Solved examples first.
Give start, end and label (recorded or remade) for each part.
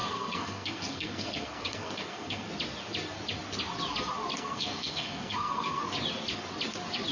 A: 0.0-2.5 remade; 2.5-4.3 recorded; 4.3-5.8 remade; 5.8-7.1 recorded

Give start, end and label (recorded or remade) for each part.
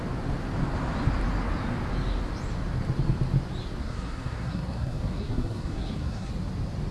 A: 0.0-3.8 recorded; 3.8-6.3 remade; 6.3-6.9 recorded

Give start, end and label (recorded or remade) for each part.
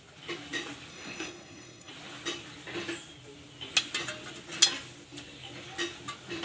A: 0.0-0.9 recorded; 0.9-1.9 remade; 1.9-6.4 recorded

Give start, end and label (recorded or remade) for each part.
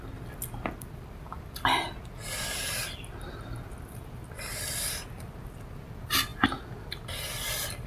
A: 0.0-7.9 recorded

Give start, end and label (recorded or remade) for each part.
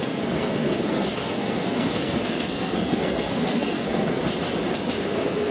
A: 0.0-4.2 remade; 4.2-5.0 recorded; 5.0-5.5 remade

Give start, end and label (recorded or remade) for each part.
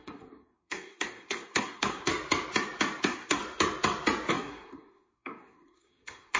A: 0.0-2.1 remade; 2.1-3.0 recorded; 3.0-3.4 remade; 3.4-4.3 recorded; 4.3-6.4 remade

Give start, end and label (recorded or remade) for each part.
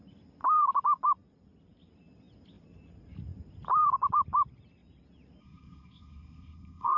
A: 0.0-5.4 recorded; 5.4-7.0 remade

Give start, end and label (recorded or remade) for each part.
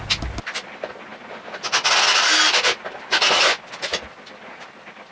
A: 0.0-5.1 recorded